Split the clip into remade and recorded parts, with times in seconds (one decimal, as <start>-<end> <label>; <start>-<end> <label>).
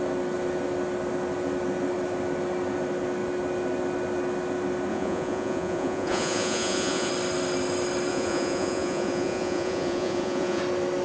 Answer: 0.0-4.9 recorded; 4.9-7.1 remade; 7.1-8.1 recorded; 8.1-10.6 remade; 10.6-11.0 recorded